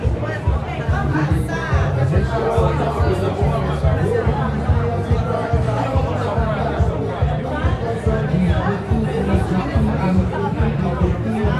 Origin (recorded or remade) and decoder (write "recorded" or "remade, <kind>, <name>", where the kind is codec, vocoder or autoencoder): remade, vocoder, BigVGAN v2